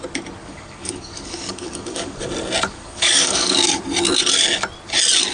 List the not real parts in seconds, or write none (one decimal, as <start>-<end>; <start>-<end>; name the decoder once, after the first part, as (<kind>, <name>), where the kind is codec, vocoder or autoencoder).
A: 0.4-2.3 (codec, DAC); 2.7-3.8